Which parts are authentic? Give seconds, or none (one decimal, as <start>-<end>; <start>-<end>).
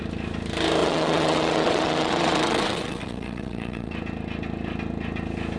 0.0-0.8; 3.9-5.6